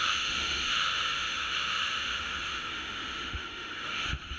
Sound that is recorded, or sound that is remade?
remade